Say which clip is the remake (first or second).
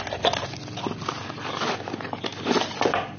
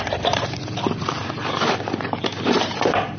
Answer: second